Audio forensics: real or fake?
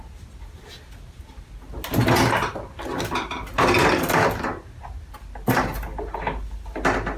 real